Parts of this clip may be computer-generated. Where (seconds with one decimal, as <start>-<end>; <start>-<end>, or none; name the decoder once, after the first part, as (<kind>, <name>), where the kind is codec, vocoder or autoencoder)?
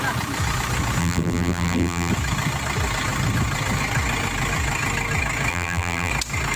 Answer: 1.0-2.1 (vocoder, BigVGAN v2); 5.5-6.1